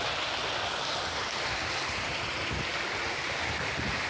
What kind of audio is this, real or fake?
real